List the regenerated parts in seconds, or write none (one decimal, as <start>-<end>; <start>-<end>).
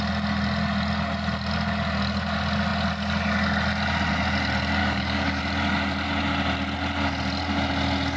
4.8-5.4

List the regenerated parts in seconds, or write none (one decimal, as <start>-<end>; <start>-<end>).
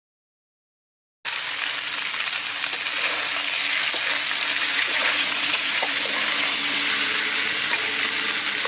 4.7-6.0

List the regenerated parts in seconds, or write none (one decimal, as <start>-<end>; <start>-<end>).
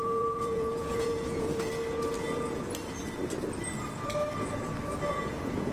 0.0-1.7; 5.1-5.7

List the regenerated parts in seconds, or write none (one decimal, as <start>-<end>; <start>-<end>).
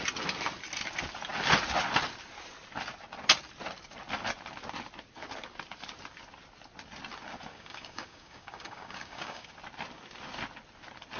7.5-9.5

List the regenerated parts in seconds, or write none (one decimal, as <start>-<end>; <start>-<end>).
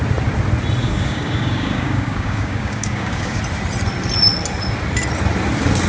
0.8-3.4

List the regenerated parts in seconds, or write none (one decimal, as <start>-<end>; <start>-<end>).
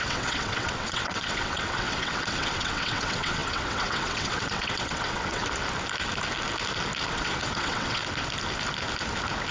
0.0-5.4; 7.1-8.0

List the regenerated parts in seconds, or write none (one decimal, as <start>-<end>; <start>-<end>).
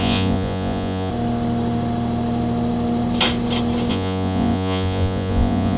0.0-1.1; 3.9-5.8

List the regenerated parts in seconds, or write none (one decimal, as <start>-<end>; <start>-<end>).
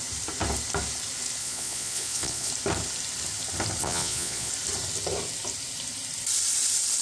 1.4-2.5; 3.8-4.5